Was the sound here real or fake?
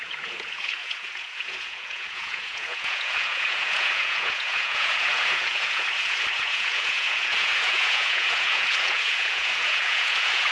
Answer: fake